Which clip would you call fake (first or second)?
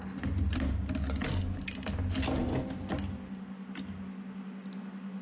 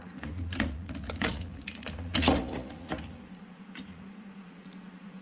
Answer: second